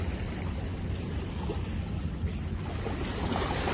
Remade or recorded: recorded